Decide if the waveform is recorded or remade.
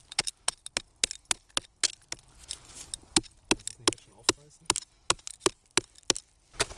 recorded